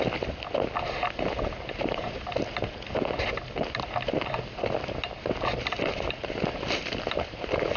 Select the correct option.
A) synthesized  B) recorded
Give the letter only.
B